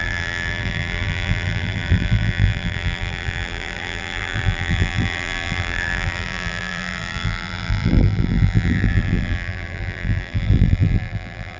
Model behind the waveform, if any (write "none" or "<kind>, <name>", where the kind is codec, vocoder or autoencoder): vocoder, BigVGAN v2